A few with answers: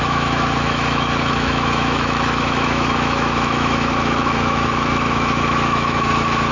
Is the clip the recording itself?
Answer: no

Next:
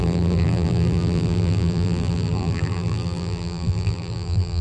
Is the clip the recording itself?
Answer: no